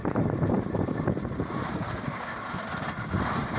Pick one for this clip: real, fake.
fake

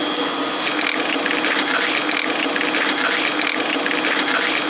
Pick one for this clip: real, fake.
real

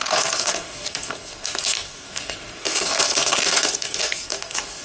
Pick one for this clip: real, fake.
fake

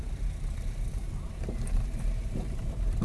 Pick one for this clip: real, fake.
real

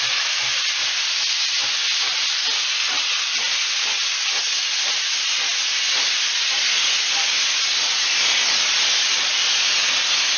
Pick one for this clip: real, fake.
real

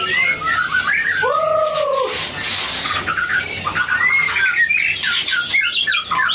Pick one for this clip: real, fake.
real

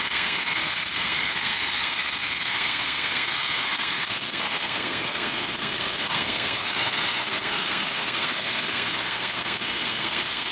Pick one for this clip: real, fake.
fake